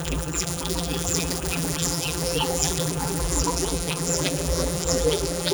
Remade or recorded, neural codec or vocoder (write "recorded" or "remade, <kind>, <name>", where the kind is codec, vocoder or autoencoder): remade, vocoder, BigVGAN v2